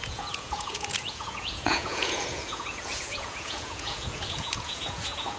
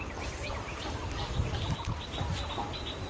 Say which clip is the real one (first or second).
second